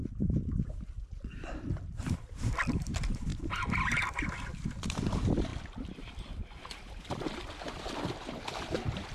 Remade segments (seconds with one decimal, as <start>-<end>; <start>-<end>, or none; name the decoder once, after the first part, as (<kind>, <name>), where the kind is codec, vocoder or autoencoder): 0.0-3.3 (vocoder, BigVGAN v2); 3.8-9.1